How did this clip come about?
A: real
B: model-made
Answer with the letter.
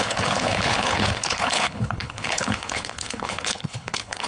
B